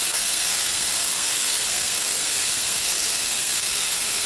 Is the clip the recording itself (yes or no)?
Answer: no